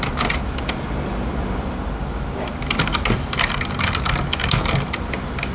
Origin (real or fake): real